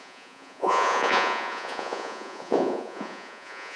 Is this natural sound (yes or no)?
no